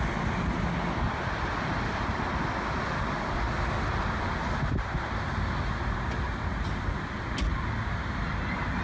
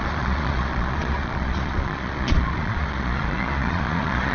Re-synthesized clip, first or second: second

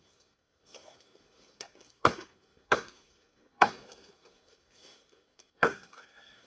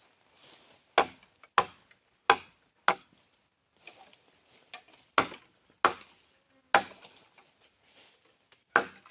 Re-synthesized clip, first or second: first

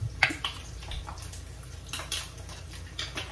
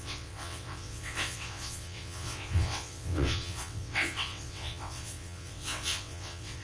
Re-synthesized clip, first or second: second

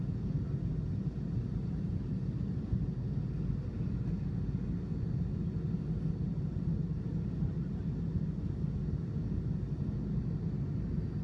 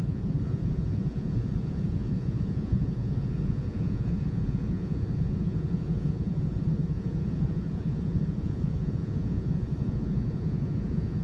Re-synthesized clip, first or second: second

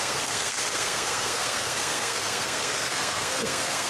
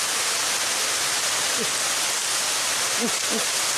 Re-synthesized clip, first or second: first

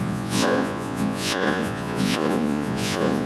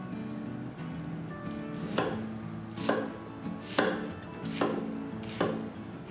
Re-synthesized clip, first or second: first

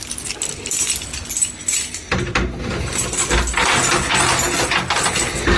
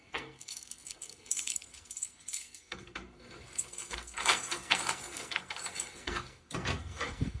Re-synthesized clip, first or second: second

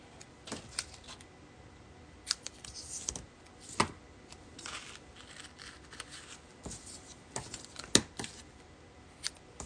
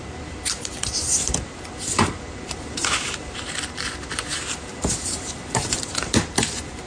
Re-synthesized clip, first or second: second